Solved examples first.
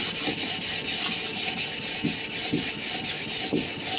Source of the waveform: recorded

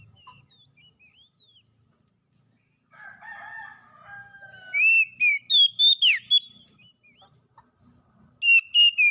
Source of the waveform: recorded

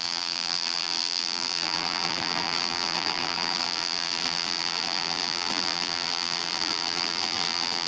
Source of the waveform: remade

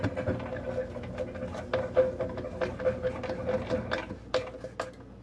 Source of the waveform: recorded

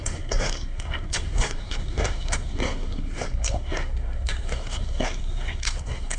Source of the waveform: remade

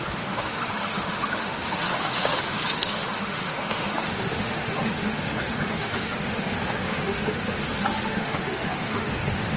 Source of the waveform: remade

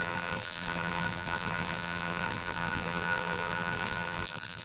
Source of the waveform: remade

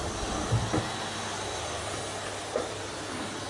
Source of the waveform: recorded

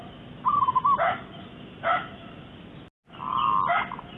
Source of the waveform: recorded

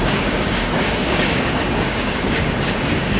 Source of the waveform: remade